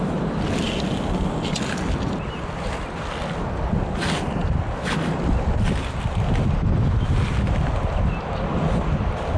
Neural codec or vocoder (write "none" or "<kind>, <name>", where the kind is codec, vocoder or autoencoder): none